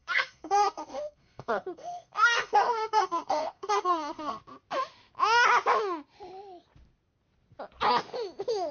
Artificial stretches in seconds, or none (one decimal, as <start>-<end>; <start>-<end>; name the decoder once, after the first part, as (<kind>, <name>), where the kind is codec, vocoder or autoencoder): 0.0-4.4 (codec, SNAC)